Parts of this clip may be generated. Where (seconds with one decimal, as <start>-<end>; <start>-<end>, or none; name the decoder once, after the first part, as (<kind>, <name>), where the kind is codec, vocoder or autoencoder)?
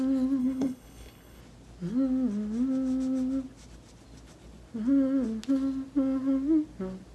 0.4-1.4 (codec, HILCodec)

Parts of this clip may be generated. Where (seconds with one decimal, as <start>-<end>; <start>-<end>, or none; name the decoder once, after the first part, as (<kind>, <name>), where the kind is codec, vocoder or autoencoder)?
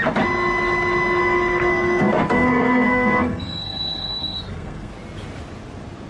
1.2-4.9 (codec, SNAC)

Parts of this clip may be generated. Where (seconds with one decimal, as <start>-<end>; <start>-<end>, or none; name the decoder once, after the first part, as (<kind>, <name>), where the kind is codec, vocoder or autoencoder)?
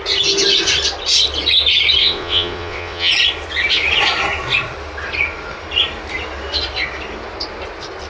2.0-3.1 (vocoder, WaveNeXt)